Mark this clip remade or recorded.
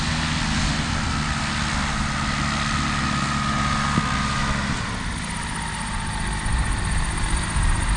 recorded